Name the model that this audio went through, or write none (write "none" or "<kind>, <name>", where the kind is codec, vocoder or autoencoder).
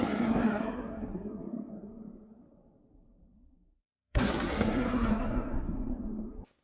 codec, SNAC